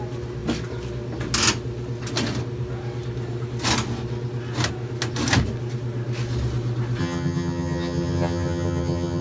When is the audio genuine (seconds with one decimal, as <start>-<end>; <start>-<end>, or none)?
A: 0.0-7.0